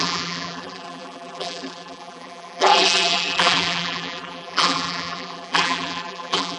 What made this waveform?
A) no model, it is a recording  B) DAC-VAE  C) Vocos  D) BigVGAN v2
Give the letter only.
D